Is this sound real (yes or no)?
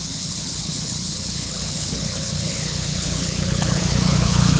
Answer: no